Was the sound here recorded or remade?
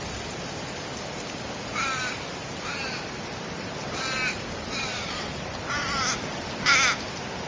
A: remade